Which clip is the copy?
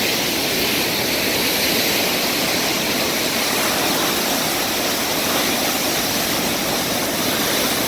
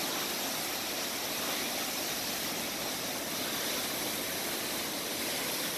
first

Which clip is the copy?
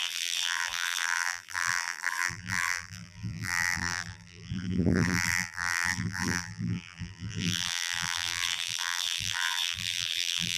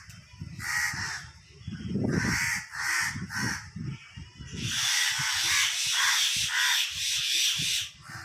first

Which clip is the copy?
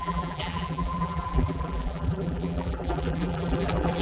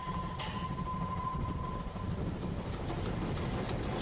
first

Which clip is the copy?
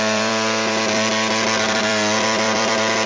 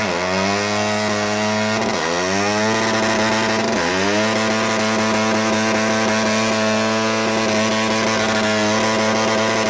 first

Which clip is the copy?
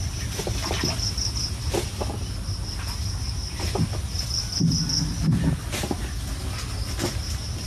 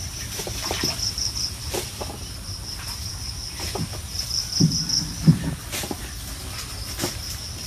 second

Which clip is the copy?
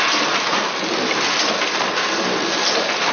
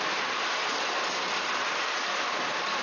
first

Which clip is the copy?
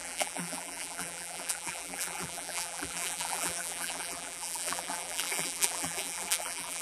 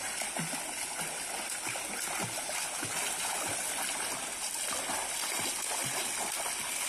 first